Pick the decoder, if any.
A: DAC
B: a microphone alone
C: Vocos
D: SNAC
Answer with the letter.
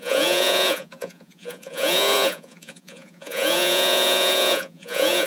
C